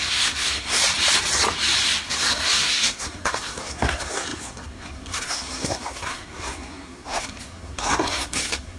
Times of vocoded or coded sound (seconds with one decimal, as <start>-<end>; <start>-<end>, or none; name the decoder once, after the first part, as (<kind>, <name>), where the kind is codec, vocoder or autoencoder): 0.0-0.8 (codec, SNAC); 2.1-8.8